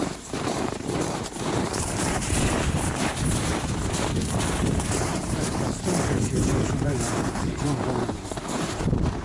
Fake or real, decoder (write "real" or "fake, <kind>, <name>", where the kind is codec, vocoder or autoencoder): fake, vocoder, BigVGAN v2